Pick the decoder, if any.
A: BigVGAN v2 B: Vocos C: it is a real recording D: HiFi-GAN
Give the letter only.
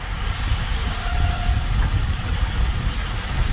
C